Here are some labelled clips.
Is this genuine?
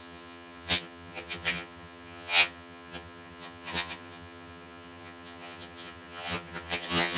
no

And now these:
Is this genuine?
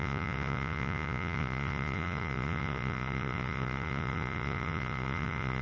no